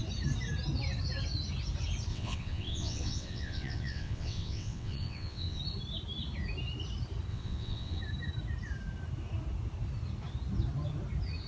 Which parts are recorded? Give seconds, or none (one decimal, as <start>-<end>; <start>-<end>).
0.0-2.1; 5.6-7.3; 8.0-11.5

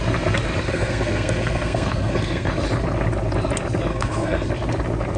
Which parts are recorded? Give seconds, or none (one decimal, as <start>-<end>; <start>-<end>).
0.0-0.7; 2.5-3.9; 4.5-5.2

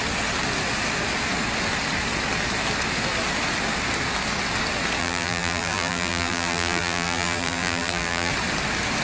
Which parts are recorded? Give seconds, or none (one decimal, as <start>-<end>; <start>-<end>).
0.0-5.0; 8.3-9.0

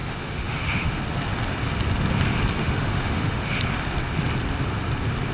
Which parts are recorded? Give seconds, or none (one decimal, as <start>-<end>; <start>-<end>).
1.0-2.6; 3.6-5.3